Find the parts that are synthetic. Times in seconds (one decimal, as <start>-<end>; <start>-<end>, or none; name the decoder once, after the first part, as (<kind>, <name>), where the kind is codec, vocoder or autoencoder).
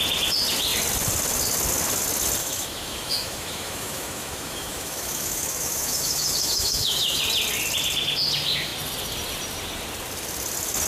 2.4-7.2 (autoencoder, DAC-VAE)